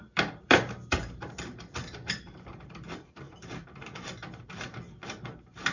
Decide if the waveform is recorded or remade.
remade